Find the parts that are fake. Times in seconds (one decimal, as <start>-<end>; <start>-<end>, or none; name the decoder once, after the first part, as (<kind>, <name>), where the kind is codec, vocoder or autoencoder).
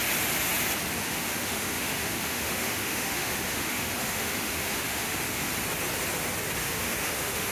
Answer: 1.0-5.5 (autoencoder, DAC-VAE); 6.6-7.5